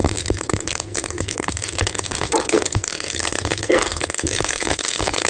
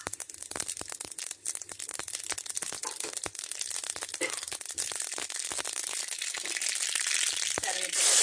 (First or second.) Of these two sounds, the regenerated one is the first